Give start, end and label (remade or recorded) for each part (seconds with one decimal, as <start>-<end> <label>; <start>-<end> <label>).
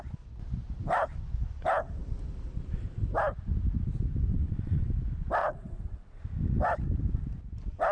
0.0-4.3 recorded; 4.3-4.9 remade; 4.9-5.4 recorded; 5.4-6.2 remade; 6.2-7.9 recorded